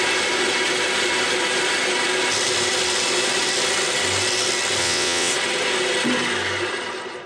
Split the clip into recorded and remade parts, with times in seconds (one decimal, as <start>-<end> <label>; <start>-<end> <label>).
0.0-4.8 recorded; 4.8-5.3 remade; 5.3-7.3 recorded